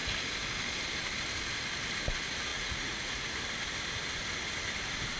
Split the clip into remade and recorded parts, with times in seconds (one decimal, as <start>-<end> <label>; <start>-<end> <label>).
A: 0.0-2.5 recorded; 2.5-3.4 remade; 3.4-5.2 recorded